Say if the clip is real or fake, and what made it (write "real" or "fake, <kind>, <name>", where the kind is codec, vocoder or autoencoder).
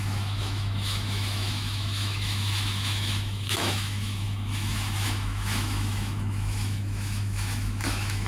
fake, autoencoder, DAC-VAE